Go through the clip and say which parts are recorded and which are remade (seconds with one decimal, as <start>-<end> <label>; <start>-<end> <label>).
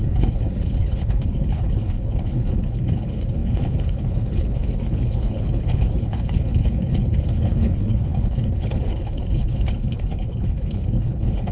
0.0-11.5 remade